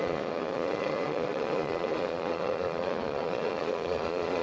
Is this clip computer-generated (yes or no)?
yes